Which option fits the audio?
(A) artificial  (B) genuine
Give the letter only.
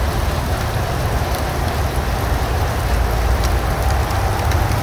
B